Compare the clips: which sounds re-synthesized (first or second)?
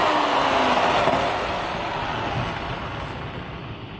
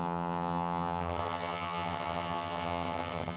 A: second